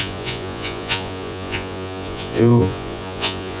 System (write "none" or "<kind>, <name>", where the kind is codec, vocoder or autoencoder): vocoder, Vocos